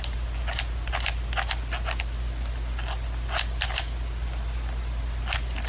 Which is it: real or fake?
real